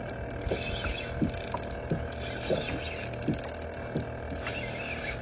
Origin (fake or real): real